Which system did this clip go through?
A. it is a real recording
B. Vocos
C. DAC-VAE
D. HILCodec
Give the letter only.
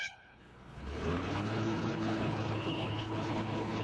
D